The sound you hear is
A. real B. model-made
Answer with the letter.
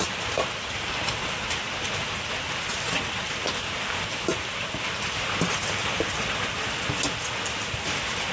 A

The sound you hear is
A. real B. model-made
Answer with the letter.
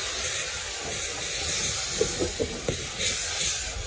A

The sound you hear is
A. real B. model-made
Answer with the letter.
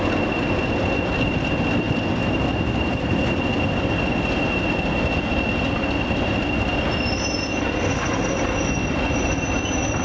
A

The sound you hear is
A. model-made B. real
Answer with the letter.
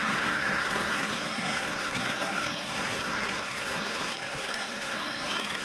A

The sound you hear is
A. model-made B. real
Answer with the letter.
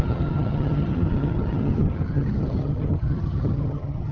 A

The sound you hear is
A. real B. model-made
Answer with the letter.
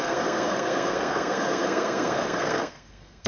B